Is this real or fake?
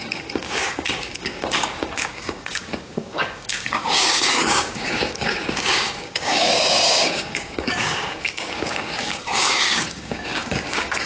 fake